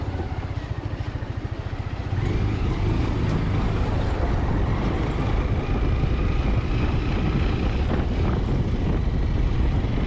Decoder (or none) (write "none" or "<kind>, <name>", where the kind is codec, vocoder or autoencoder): none